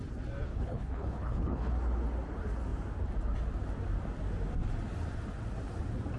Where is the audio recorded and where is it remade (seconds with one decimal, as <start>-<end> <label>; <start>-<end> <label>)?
0.0-0.5 recorded; 0.5-1.7 remade; 1.7-6.2 recorded